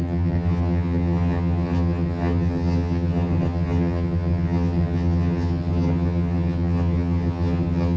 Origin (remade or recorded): remade